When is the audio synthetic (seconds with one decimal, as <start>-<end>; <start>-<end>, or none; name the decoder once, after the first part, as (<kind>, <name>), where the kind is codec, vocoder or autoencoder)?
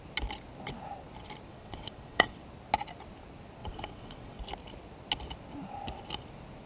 1.5-2.4 (vocoder, WaveNeXt); 3.6-4.4